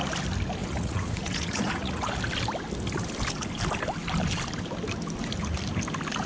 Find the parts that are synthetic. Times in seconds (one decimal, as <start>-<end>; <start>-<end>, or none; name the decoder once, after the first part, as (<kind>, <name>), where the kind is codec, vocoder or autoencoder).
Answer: 0.6-2.1 (vocoder, Vocos)